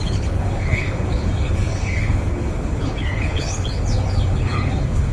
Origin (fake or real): fake